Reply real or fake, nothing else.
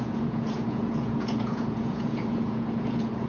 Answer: fake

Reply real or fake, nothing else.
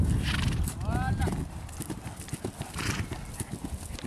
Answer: real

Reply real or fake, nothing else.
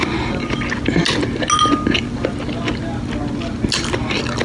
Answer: real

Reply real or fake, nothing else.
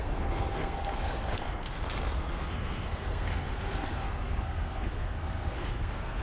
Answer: fake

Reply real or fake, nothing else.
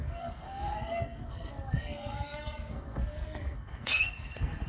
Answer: fake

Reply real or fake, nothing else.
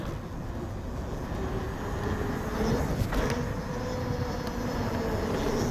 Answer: real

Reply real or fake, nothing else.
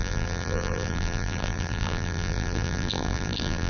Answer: fake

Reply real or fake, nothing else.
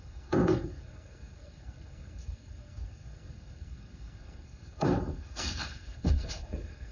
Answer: fake